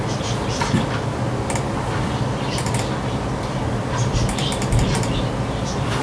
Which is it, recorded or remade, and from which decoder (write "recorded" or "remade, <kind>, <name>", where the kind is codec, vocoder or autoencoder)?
recorded